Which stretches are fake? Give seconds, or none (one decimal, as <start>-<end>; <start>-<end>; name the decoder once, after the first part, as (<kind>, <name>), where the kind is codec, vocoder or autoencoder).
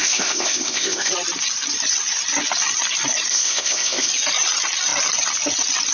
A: 0.0-1.1 (codec, ZipCodec); 3.3-4.1